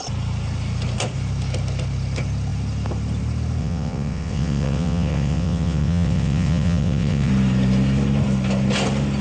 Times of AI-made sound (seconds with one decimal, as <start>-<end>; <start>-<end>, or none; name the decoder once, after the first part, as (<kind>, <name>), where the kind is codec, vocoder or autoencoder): 3.6-7.3 (vocoder, WaveNeXt)

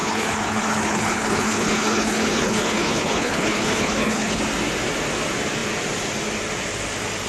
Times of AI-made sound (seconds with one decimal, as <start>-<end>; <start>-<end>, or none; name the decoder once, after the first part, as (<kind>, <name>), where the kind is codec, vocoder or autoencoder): 0.0-4.4 (codec, HILCodec)

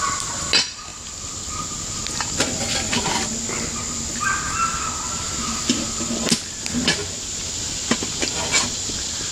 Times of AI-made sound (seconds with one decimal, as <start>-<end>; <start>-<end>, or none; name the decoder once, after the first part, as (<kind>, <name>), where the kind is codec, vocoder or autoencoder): none

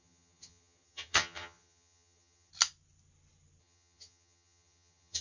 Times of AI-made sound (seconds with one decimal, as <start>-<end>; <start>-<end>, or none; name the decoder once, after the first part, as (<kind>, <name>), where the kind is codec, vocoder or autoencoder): 0.0-2.5 (vocoder, HiFi-GAN); 3.6-5.2